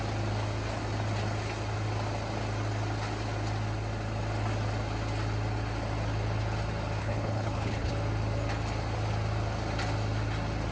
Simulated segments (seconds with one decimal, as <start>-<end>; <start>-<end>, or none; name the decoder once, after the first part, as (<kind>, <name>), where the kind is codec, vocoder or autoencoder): 7.0-7.9 (codec, HILCodec)